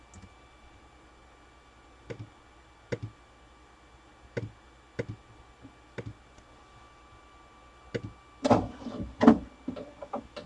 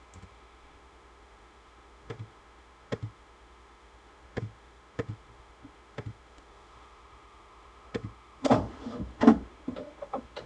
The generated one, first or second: second